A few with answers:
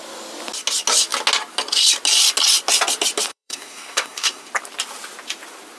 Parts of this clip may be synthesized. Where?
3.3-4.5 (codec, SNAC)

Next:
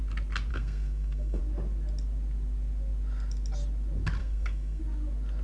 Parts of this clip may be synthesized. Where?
0.5-1.4 (codec, SNAC); 4.2-4.8